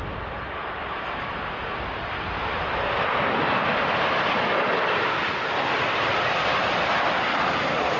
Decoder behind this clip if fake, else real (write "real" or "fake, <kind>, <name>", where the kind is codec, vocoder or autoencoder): real